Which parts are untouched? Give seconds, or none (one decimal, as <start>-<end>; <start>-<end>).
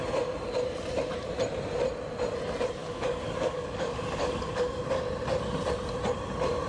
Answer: 0.0-2.8; 4.8-6.7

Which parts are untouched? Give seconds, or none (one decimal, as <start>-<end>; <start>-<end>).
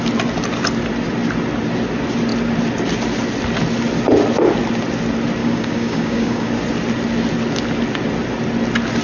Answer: 0.0-5.4; 6.5-9.0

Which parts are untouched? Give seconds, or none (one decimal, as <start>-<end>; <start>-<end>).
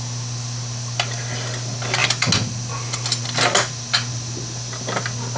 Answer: 0.0-5.4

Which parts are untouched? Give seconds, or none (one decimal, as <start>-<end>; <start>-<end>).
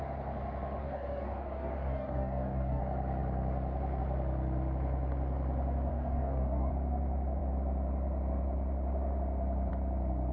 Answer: 0.0-0.8; 2.8-5.9; 6.7-10.3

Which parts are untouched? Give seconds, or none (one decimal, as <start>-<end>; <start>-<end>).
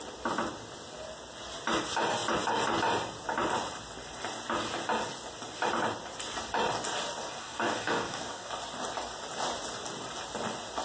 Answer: 0.0-7.4; 8.5-10.8